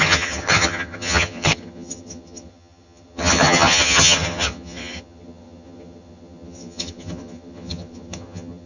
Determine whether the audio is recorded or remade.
remade